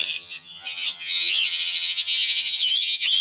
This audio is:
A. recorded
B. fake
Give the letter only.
B